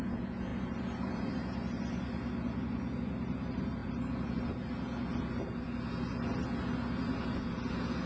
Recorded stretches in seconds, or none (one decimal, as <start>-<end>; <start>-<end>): 0.0-0.5; 2.3-3.8; 4.7-8.1